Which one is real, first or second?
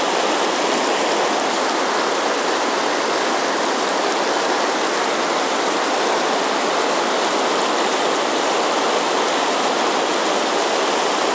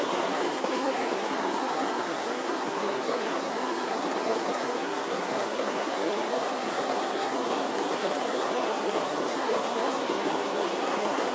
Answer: first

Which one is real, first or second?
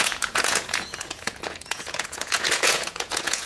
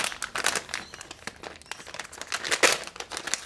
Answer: second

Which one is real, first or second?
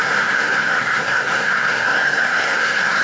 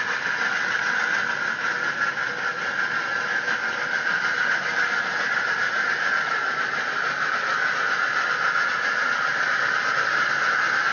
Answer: second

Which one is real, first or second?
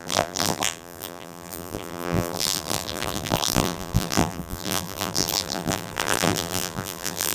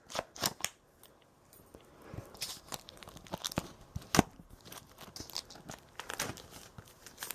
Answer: second